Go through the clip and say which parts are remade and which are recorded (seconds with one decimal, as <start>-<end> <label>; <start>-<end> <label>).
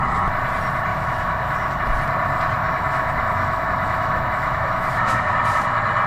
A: 0.0-0.9 recorded; 0.9-1.8 remade; 1.8-2.6 recorded; 2.6-5.3 remade; 5.3-6.1 recorded